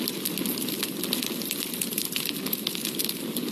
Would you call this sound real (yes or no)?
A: yes